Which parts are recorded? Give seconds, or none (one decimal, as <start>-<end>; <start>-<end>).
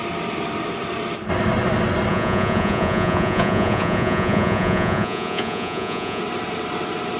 0.0-2.1; 6.2-7.2